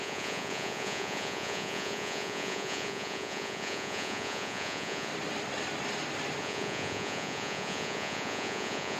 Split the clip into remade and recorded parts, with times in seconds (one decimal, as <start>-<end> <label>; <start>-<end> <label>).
0.0-5.1 remade; 5.1-6.4 recorded; 6.4-9.0 remade